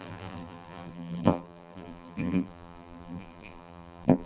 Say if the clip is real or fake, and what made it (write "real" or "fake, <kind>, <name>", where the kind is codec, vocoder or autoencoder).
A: fake, vocoder, BigVGAN v2